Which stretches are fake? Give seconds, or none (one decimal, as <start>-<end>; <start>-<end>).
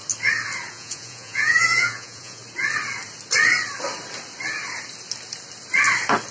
0.7-2.4